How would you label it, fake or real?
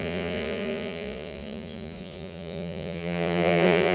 fake